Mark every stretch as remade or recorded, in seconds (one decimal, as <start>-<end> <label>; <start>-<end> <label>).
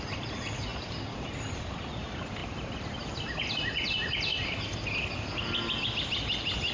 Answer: 0.0-0.7 recorded; 0.7-1.9 remade; 1.9-4.3 recorded; 4.3-4.8 remade; 4.8-6.7 recorded